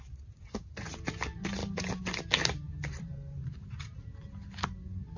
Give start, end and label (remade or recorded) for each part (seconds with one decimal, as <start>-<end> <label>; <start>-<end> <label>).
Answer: 0.0-5.2 recorded